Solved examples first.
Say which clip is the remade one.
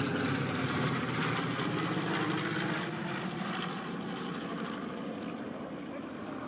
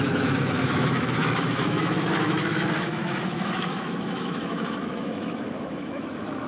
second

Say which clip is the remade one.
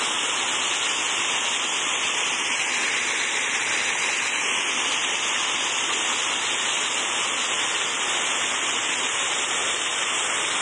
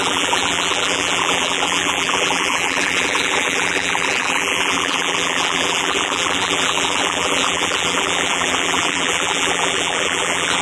second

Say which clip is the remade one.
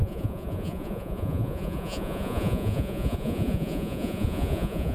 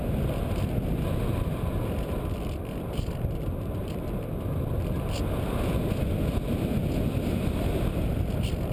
first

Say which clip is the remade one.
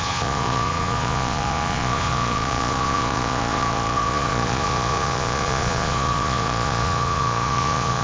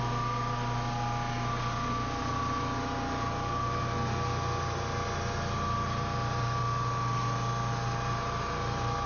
first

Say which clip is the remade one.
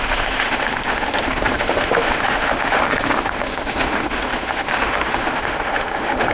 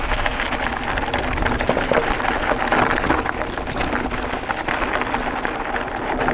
first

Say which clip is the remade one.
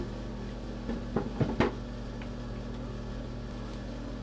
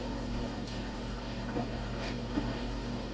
second